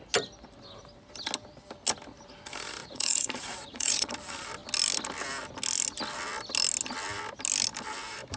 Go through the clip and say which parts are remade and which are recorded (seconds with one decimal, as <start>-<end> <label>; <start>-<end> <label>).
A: 0.0-2.8 recorded; 2.8-4.1 remade; 4.1-8.4 recorded